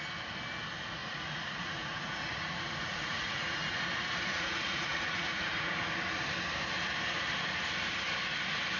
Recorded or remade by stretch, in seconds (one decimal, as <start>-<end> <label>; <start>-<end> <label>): 0.0-1.0 recorded; 1.0-3.8 remade; 3.8-4.3 recorded; 4.3-5.8 remade; 5.8-8.8 recorded